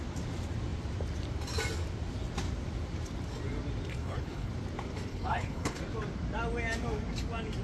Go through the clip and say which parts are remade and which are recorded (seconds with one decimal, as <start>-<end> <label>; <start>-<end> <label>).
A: 0.0-3.9 recorded; 3.9-4.5 remade; 4.5-5.1 recorded; 5.1-5.8 remade; 5.8-7.6 recorded